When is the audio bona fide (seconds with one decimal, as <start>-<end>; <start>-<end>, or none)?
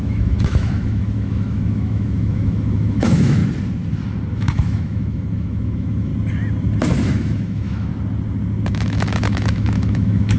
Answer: 3.4-4.3; 6.1-7.1; 7.9-8.7